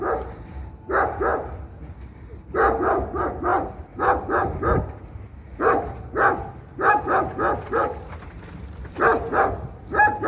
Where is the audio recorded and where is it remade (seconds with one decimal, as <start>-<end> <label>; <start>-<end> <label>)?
0.0-10.3 recorded